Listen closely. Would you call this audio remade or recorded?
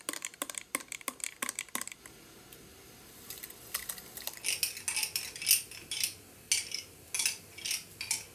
recorded